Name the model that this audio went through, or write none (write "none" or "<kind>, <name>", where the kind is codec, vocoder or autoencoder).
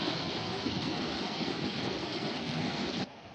codec, SNAC